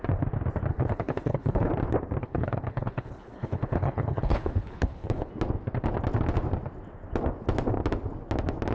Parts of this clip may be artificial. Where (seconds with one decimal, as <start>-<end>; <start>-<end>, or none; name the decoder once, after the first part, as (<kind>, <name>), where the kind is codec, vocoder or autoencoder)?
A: 0.7-1.7 (codec, HILCodec); 2.2-5.3